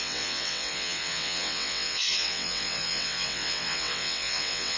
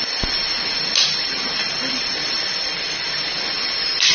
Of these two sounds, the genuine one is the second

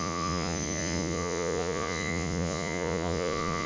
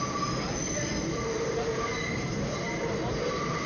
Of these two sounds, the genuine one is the second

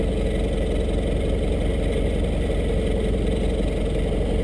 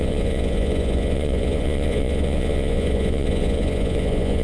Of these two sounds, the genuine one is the first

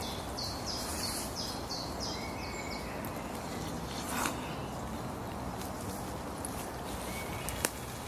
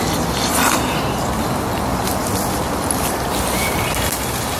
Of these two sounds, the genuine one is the first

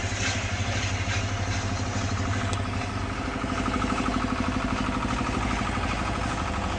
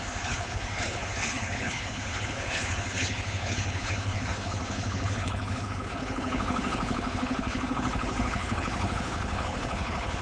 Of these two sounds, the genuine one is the first